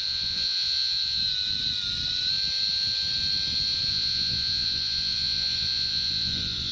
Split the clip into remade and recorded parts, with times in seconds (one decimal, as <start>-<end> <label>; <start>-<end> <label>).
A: 0.0-1.2 remade; 1.2-3.9 recorded; 3.9-6.7 remade